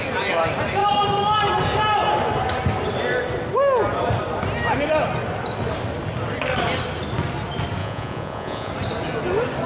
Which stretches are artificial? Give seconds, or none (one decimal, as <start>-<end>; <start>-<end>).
7.8-8.7